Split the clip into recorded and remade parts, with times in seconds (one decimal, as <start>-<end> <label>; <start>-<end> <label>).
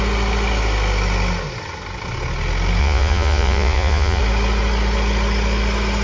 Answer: 0.0-2.8 recorded; 2.8-4.2 remade; 4.2-6.0 recorded